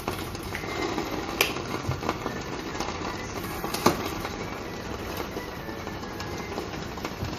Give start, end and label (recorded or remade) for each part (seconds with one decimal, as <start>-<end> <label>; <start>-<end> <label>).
0.0-1.0 remade; 1.0-1.7 recorded; 1.7-2.7 remade; 2.7-3.3 recorded; 3.3-7.4 remade